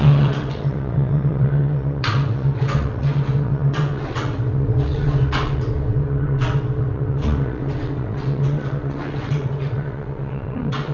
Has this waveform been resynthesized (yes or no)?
yes